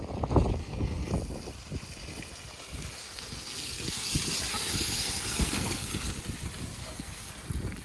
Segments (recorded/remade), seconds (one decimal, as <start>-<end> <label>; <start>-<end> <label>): 0.0-0.6 recorded; 0.6-1.1 remade; 1.1-3.0 recorded; 3.0-4.1 remade; 4.1-4.5 recorded; 4.5-6.1 remade; 6.1-6.8 recorded; 6.8-7.3 remade; 7.3-7.8 recorded